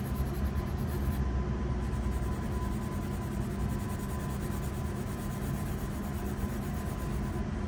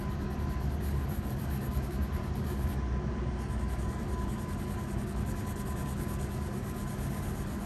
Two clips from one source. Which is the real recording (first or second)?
first